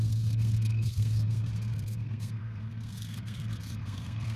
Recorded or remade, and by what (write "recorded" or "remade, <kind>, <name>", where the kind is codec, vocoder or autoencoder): remade, codec, SNAC